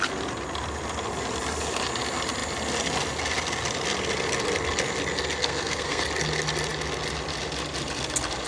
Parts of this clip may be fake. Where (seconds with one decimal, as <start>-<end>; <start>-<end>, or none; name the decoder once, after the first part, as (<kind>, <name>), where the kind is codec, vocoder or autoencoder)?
5.4-6.0 (codec, SNAC)